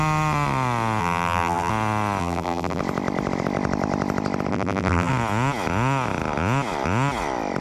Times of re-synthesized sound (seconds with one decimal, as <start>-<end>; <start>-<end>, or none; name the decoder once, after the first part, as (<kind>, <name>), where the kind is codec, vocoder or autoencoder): 1.0-1.7 (vocoder, BigVGAN v2); 2.2-2.8; 4.5-5.1